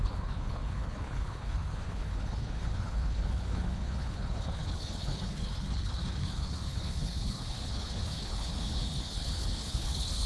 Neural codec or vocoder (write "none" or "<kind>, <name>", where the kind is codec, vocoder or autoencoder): codec, HILCodec